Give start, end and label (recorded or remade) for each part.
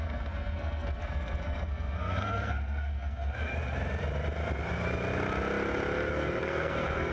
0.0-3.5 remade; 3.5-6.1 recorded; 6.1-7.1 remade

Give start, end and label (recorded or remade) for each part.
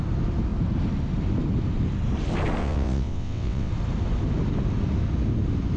0.0-2.6 recorded; 2.6-3.7 remade; 3.7-5.8 recorded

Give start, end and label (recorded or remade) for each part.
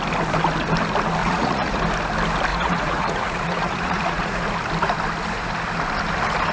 0.0-1.2 recorded; 1.2-1.8 remade; 1.8-2.5 recorded; 2.5-4.4 remade; 4.4-6.5 recorded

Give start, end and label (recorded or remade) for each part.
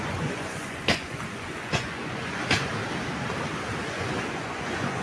0.0-2.7 remade; 2.7-3.9 recorded; 3.9-5.0 remade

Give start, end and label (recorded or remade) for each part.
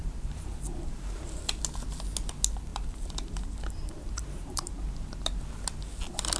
0.0-1.6 remade; 1.6-2.7 recorded; 2.7-5.4 remade; 5.4-6.4 recorded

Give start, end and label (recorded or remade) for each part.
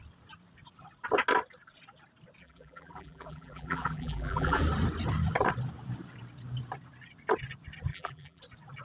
0.0-2.4 recorded; 2.4-4.6 remade; 4.6-7.9 recorded; 7.9-8.4 remade; 8.4-8.8 recorded